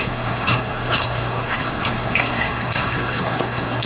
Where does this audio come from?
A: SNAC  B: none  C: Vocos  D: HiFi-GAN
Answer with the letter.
A